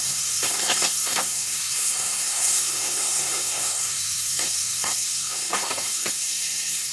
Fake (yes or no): yes